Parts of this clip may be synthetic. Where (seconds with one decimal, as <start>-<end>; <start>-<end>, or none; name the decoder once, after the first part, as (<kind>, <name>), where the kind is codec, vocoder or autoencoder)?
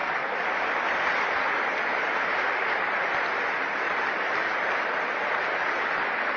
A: 0.0-6.4 (vocoder, BigVGAN v2)